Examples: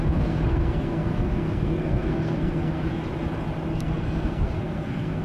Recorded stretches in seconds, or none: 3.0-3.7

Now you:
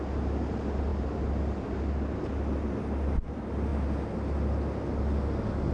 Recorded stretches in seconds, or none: 0.0-5.7

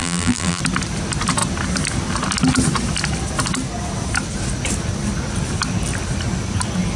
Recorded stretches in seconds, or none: 0.6-7.0

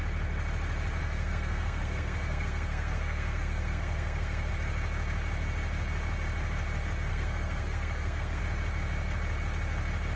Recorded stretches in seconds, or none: 0.0-1.0; 4.5-7.1; 8.4-10.2

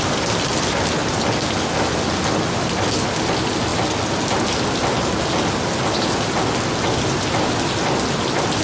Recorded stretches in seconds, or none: 0.0-8.6

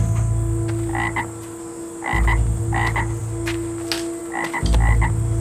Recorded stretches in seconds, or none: 0.0-5.4

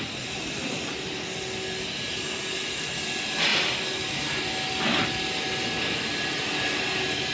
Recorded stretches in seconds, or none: 0.0-7.3